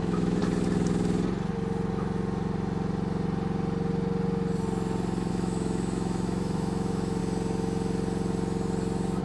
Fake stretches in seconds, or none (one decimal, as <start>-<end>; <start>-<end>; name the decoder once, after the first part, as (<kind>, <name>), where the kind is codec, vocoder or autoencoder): 0.0-0.4 (autoencoder, DAC-VAE); 5.3-7.2